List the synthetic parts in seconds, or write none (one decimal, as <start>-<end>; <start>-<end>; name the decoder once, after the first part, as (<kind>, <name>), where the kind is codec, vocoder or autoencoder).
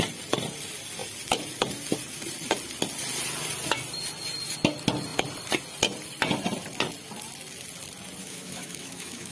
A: 8.2-9.3 (autoencoder, DAC-VAE)